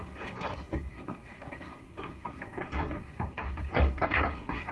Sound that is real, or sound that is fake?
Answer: fake